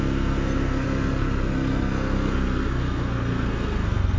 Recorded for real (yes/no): no